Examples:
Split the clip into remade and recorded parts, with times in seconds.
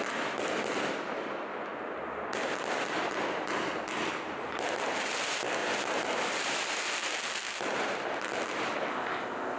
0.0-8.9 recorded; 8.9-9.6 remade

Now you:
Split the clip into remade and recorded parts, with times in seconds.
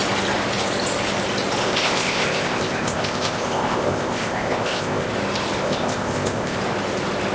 0.0-1.6 recorded; 1.6-5.1 remade; 5.1-5.6 recorded; 5.6-6.6 remade; 6.6-7.3 recorded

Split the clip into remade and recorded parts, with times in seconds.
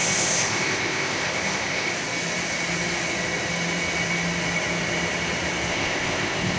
0.0-1.9 remade; 1.9-5.7 recorded; 5.7-6.6 remade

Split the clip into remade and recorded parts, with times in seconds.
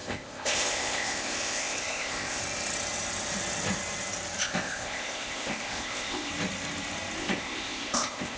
0.0-2.4 remade; 2.4-4.4 recorded; 4.4-6.3 remade; 6.3-7.2 recorded; 7.2-8.4 remade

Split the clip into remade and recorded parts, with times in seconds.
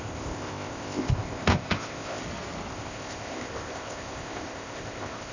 0.0-2.2 remade; 2.2-2.7 recorded; 2.7-5.3 remade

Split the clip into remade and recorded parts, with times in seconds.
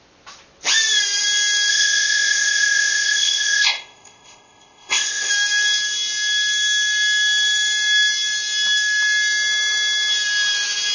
0.0-1.7 recorded; 1.7-5.3 remade; 5.3-10.9 recorded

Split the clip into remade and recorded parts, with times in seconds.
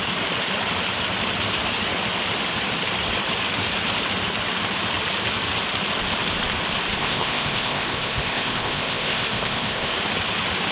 0.0-7.0 recorded; 7.0-9.9 remade; 9.9-10.7 recorded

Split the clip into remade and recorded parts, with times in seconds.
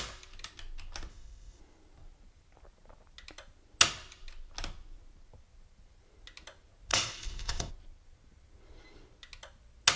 0.0-1.1 recorded; 1.1-1.6 remade; 1.6-6.9 recorded; 6.9-7.7 remade; 7.7-10.0 recorded